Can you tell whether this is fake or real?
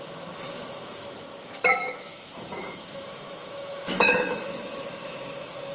fake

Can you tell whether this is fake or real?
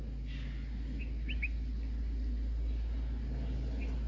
real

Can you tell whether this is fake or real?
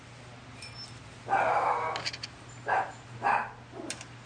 real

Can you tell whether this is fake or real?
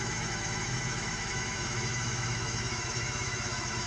fake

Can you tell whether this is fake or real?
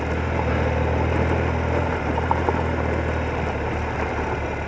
real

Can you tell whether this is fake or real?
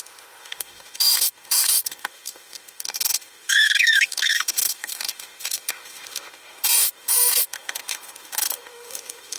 fake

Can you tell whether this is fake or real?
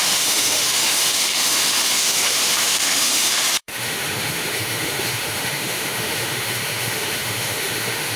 fake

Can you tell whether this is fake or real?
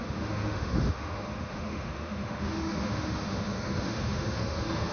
fake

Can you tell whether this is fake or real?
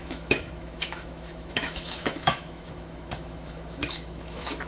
fake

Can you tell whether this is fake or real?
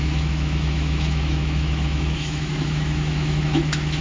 fake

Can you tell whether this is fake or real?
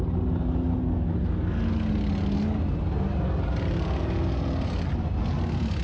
real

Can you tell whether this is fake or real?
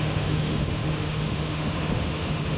fake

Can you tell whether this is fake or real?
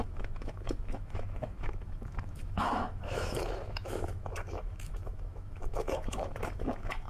fake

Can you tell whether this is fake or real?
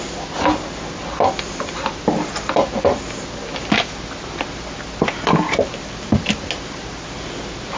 real